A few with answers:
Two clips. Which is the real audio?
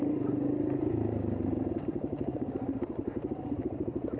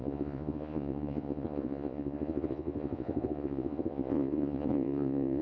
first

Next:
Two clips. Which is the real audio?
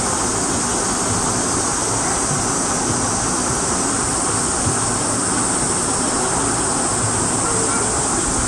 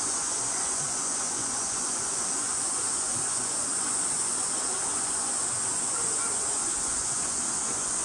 first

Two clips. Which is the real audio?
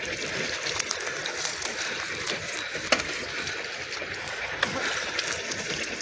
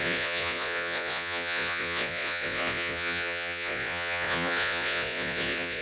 first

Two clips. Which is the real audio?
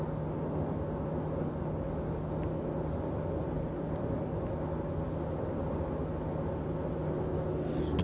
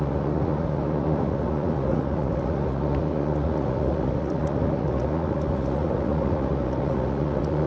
first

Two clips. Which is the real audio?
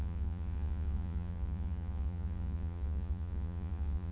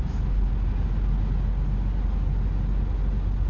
second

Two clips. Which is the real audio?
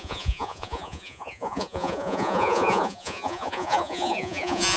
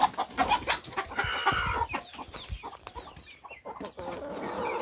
second